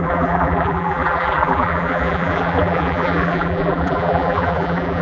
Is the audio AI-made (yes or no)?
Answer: yes